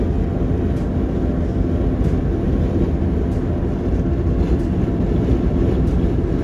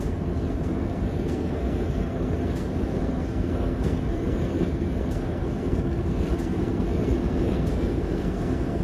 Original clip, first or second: first